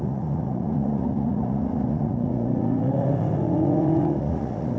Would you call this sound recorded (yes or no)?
no